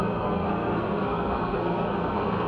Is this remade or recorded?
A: remade